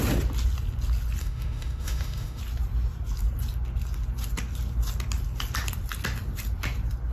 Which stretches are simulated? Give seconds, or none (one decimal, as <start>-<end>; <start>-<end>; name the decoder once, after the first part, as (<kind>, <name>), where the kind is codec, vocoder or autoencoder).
1.2-2.4 (autoencoder, DAC-VAE)